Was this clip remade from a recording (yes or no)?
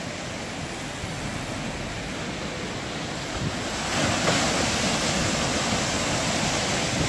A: no